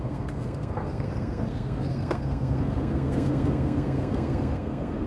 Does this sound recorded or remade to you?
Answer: remade